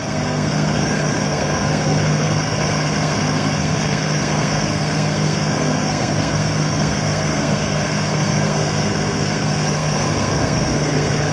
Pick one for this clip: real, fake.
fake